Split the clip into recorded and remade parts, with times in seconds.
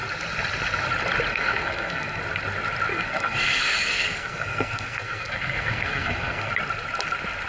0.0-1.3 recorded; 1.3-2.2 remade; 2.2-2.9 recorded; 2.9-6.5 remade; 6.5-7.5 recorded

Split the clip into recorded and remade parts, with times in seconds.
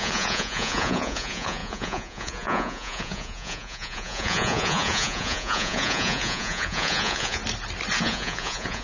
0.0-7.4 remade; 7.4-8.0 recorded; 8.0-8.8 remade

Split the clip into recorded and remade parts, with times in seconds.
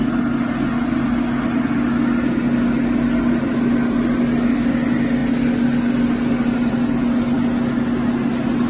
0.0-8.7 recorded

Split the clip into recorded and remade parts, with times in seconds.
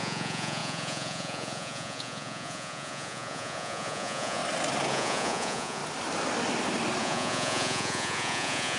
0.0-4.4 remade; 4.4-4.9 recorded; 4.9-5.8 remade; 5.8-7.0 recorded; 7.0-8.8 remade